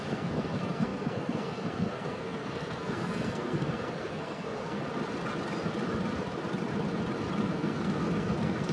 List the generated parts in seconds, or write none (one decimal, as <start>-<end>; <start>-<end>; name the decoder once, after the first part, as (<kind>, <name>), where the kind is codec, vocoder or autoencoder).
0.0-4.8 (codec, SNAC); 7.4-8.7